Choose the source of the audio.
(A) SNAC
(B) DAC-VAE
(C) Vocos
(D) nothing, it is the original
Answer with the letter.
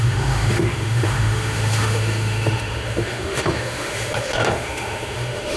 B